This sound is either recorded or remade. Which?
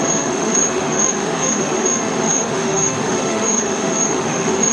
remade